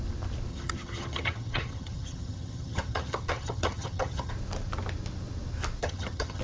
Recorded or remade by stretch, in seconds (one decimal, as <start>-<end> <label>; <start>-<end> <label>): 0.0-0.5 recorded; 0.5-4.3 remade; 4.3-5.8 recorded; 5.8-6.4 remade